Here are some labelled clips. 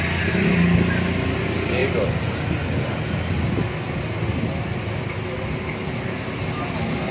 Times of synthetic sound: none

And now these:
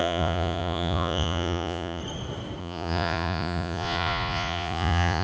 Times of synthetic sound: 0.0-2.0 (vocoder, Vocos); 2.6-5.2

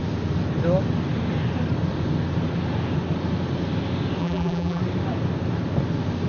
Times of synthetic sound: 4.2-4.8 (vocoder, BigVGAN v2)